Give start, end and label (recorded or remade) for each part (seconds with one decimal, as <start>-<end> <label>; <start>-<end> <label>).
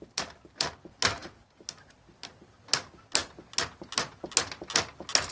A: 0.0-5.3 recorded